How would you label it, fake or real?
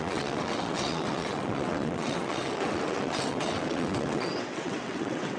fake